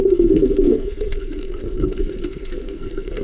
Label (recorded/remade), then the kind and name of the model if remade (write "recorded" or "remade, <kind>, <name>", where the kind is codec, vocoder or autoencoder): remade, codec, SNAC